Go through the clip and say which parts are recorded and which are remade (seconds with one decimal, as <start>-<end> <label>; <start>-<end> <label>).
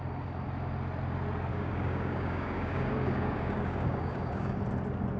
0.0-1.5 recorded; 1.5-4.6 remade; 4.6-5.2 recorded